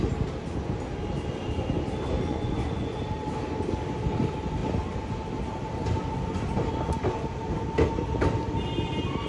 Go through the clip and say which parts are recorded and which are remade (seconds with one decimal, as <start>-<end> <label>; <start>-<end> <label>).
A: 0.0-2.3 recorded; 2.3-3.0 remade; 3.0-9.3 recorded